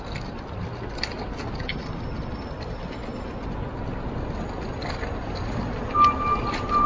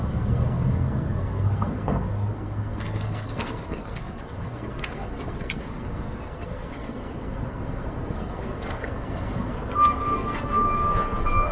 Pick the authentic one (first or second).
first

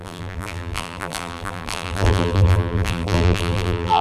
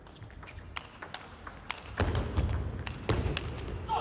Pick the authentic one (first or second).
second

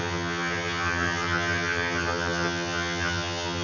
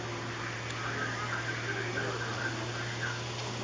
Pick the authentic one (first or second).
second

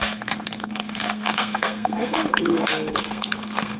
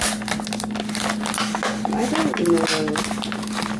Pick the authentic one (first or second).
second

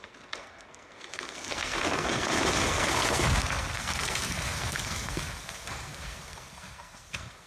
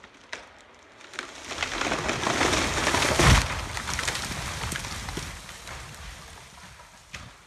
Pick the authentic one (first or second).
second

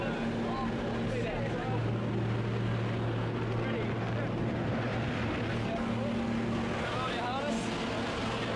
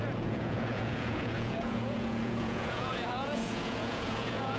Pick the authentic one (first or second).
first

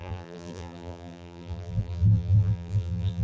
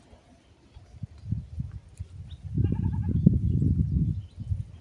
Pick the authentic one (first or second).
second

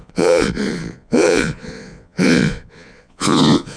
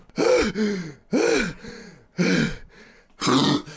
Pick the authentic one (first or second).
second